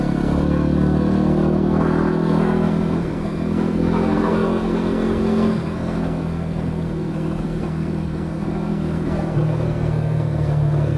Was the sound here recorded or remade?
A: remade